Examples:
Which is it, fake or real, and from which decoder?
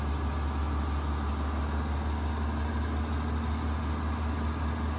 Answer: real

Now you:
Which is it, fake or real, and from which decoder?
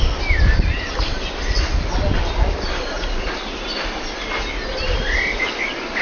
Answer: real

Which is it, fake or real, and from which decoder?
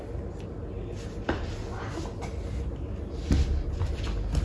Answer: real